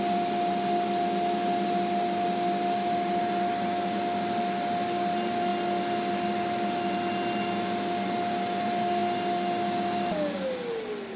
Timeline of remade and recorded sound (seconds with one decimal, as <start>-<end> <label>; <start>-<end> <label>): 0.0-11.2 recorded